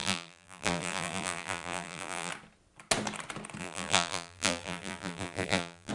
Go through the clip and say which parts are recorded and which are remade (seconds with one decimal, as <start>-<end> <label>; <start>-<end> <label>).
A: 0.0-2.3 remade; 2.3-3.6 recorded; 3.6-5.9 remade